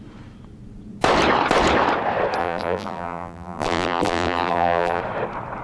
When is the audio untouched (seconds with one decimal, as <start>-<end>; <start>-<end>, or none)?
0.0-2.4; 5.0-5.6

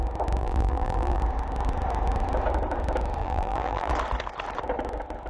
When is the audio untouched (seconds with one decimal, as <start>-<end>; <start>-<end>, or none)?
0.0-0.4; 1.2-3.2; 3.9-5.3

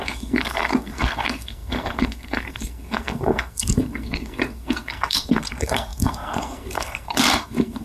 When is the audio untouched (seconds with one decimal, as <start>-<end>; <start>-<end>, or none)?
none

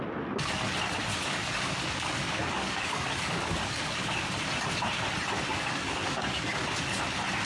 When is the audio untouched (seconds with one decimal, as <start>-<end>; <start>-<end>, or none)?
0.0-1.1; 4.3-5.5; 6.6-7.5

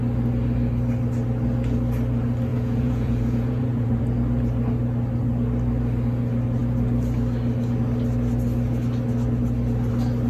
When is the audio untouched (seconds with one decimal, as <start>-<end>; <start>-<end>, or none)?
0.0-2.5; 4.0-10.3